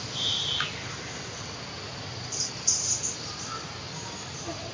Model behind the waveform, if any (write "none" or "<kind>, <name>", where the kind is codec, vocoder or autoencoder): none